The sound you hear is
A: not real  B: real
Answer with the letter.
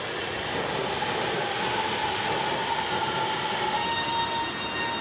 B